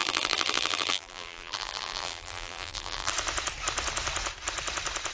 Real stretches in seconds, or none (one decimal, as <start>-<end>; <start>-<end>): 3.1-5.1